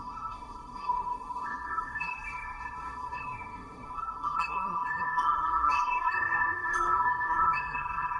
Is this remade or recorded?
remade